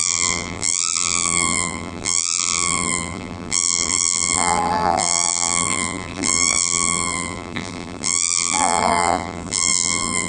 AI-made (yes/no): yes